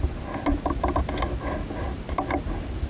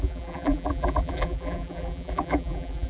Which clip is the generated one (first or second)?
second